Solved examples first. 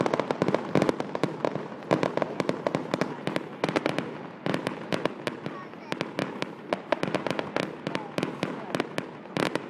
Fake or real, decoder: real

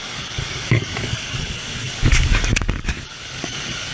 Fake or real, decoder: fake, codec, DAC